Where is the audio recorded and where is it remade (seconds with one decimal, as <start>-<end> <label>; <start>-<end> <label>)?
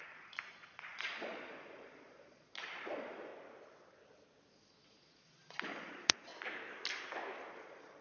0.0-3.3 remade; 3.3-4.5 recorded; 4.5-6.3 remade; 6.3-7.5 recorded; 7.5-8.0 remade